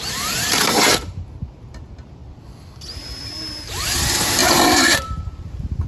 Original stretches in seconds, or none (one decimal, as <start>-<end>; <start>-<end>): 2.2-3.2